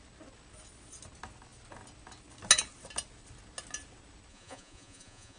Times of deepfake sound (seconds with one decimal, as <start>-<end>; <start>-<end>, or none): 4.3-5.4